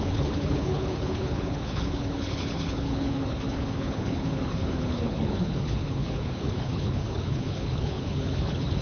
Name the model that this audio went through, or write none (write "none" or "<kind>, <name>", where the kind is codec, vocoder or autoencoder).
codec, HILCodec